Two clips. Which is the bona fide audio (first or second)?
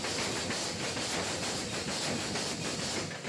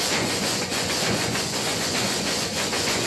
first